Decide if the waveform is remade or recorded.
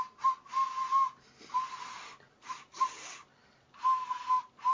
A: recorded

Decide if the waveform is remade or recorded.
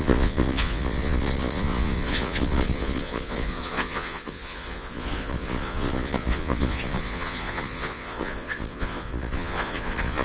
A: remade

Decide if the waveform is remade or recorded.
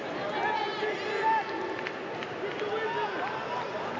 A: recorded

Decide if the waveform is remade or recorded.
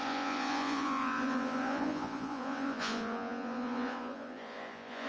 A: remade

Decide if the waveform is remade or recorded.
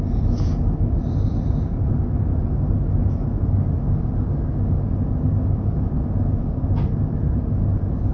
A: recorded